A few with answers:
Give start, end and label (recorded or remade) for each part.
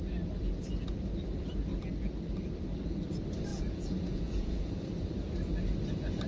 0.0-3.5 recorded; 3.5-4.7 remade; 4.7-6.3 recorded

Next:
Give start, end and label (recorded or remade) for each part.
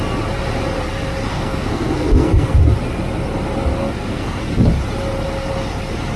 0.0-1.3 recorded; 1.3-2.6 remade; 2.6-3.8 recorded; 3.8-4.4 remade; 4.4-6.2 recorded